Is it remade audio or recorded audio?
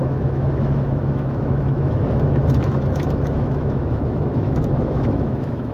remade